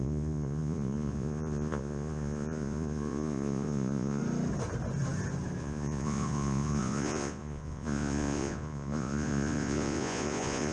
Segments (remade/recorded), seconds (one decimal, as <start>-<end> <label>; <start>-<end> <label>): 0.0-4.2 remade; 4.2-5.6 recorded; 5.6-10.7 remade